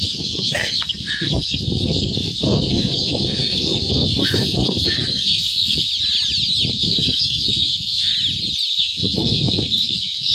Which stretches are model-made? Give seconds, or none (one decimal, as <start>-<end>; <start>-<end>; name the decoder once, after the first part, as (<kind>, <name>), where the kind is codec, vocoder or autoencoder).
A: 0.0-5.9 (codec, SNAC); 6.7-8.1; 8.7-10.3